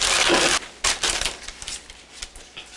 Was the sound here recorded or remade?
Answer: recorded